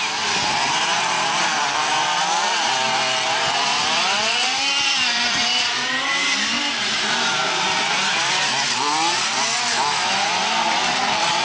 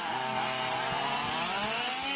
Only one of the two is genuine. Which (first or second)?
second